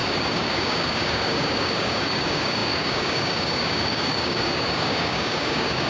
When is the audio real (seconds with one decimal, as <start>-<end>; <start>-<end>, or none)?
none